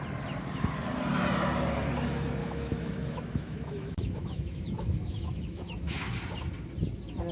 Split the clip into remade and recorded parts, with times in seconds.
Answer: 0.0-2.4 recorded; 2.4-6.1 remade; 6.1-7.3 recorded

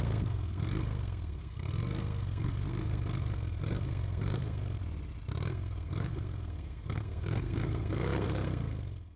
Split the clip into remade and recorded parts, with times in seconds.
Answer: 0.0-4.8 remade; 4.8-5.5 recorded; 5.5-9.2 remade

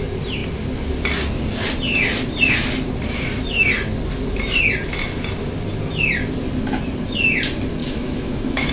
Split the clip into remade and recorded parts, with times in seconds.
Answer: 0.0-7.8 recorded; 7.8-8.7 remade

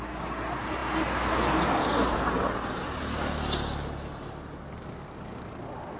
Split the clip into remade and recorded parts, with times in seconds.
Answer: 0.0-6.0 recorded